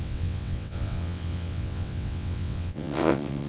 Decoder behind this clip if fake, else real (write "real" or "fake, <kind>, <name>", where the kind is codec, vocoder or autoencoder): fake, vocoder, WaveNeXt